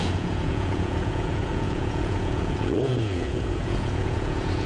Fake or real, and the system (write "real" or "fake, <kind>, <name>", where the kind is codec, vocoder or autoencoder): fake, vocoder, Vocos